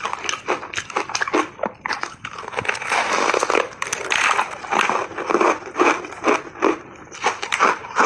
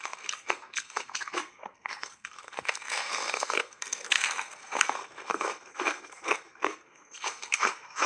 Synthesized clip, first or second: second